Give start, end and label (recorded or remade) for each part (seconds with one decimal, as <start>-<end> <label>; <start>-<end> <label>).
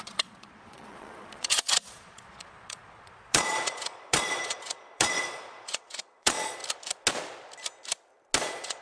0.0-6.6 remade; 6.6-8.4 recorded; 8.4-8.8 remade